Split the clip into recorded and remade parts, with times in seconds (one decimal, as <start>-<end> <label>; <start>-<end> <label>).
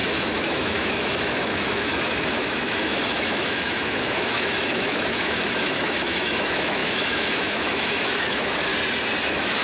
0.0-8.7 remade; 8.7-9.2 recorded; 9.2-9.6 remade